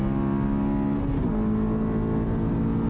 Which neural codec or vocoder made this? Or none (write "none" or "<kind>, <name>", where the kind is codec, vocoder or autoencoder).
none